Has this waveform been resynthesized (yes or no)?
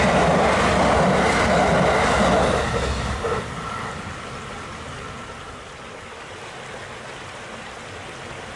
no